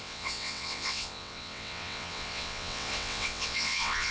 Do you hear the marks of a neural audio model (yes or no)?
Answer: yes